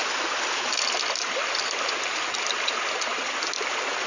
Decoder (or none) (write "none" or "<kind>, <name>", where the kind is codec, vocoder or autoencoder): none